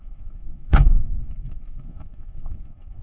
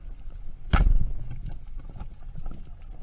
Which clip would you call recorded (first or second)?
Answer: second